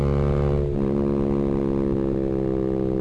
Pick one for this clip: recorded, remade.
recorded